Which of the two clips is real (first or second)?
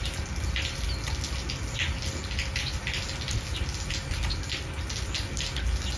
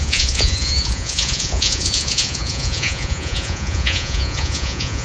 first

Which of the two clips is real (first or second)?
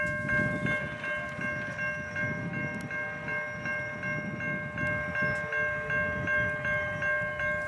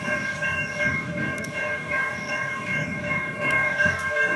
first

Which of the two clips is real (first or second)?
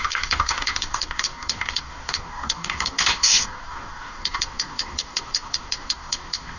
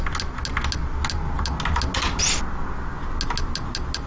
second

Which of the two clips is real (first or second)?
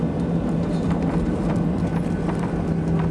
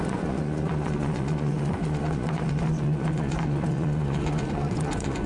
first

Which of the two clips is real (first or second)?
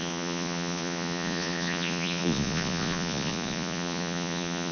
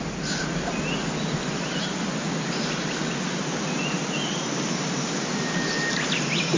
second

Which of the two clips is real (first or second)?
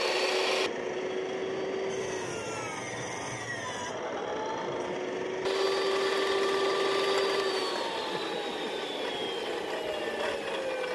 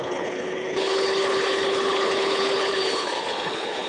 first